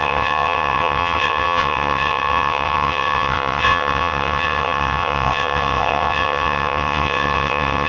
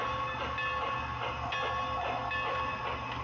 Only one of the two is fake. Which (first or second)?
first